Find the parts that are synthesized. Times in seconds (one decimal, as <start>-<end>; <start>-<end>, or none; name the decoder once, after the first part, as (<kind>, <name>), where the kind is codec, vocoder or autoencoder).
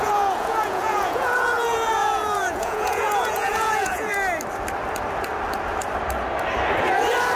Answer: 0.0-4.1 (vocoder, Vocos)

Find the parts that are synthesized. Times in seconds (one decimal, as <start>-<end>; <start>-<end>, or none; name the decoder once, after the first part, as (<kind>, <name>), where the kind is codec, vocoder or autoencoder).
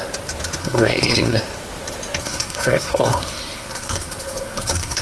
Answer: 0.6-1.4 (codec, SNAC); 2.2-5.0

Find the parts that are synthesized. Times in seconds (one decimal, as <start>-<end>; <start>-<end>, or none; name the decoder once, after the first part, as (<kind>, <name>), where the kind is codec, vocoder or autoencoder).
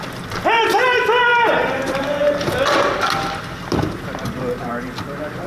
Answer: none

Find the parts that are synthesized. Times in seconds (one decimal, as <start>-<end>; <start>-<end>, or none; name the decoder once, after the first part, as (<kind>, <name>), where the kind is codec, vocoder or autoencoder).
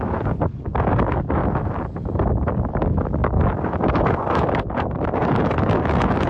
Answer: 0.0-1.4 (codec, DAC); 2.7-6.3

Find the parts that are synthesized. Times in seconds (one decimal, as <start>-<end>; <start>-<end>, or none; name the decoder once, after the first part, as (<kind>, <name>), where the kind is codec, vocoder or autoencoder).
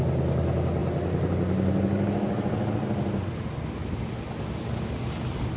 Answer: none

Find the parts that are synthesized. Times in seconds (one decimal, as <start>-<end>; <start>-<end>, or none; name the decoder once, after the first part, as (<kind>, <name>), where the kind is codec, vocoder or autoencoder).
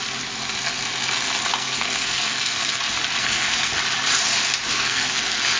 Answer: 1.5-2.8 (codec, SNAC); 3.2-3.7; 4.7-5.6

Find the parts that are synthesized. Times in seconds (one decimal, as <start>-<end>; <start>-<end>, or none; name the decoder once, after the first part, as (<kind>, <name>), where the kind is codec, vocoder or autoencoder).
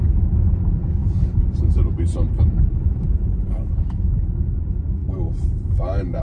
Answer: 1.0-4.1 (vocoder, BigVGAN v2); 5.0-6.2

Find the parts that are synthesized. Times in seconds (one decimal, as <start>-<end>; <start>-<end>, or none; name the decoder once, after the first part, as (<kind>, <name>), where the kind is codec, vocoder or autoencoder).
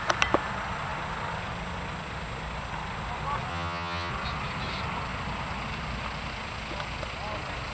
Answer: 3.5-4.1 (vocoder, HiFi-GAN)